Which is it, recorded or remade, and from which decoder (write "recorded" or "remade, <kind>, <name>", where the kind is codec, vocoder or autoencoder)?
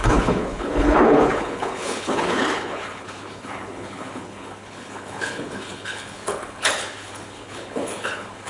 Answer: remade, codec, HILCodec